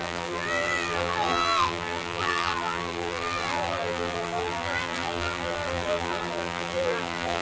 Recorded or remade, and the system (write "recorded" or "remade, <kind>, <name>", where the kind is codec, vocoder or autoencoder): remade, vocoder, BigVGAN v2